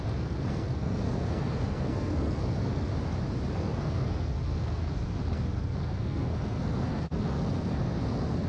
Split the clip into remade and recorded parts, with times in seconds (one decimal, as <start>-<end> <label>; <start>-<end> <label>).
0.0-2.9 remade; 2.9-3.5 recorded; 3.5-8.5 remade